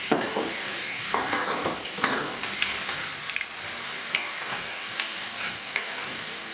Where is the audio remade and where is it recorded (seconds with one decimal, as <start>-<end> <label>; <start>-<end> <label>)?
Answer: 0.0-3.0 remade; 3.0-3.8 recorded; 3.8-6.5 remade